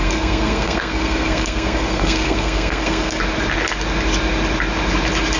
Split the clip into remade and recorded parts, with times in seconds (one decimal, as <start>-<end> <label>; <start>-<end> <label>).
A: 0.0-3.2 remade; 3.2-5.4 recorded